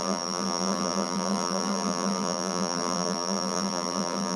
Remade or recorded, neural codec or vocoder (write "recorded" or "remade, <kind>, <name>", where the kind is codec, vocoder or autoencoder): remade, vocoder, BigVGAN v2